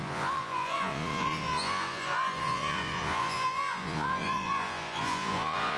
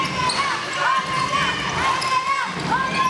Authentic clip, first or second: second